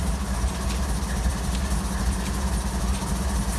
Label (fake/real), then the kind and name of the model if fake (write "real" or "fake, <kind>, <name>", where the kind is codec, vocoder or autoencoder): real